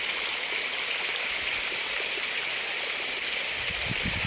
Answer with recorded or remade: recorded